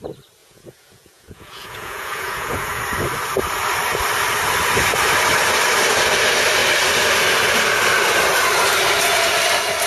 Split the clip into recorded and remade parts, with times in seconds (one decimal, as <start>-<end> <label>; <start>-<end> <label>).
0.0-0.4 recorded; 0.4-2.8 remade; 2.8-9.9 recorded

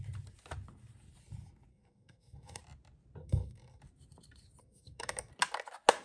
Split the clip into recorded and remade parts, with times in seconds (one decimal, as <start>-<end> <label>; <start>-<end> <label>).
0.0-1.7 recorded; 1.7-2.6 remade; 2.6-3.2 recorded; 3.2-3.8 remade; 3.8-4.6 recorded; 4.6-5.3 remade; 5.3-6.0 recorded